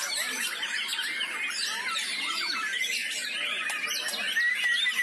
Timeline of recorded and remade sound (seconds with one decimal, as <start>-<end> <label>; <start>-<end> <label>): 0.0-3.0 remade; 3.0-4.5 recorded; 4.5-5.0 remade